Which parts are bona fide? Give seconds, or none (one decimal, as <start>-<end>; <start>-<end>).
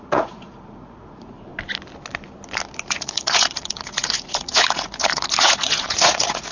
1.5-2.9